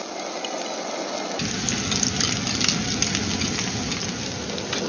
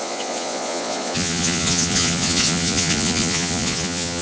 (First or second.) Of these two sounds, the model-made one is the second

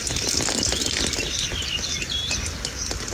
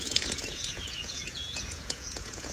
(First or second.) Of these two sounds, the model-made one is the second